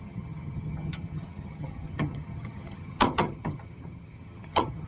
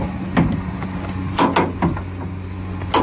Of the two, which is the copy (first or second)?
first